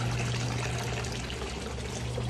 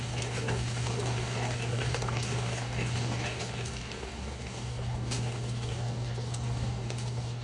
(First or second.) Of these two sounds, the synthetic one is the second